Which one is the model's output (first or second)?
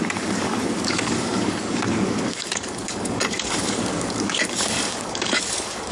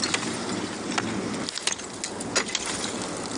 first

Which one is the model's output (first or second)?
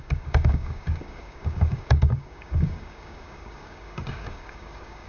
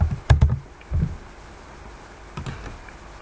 first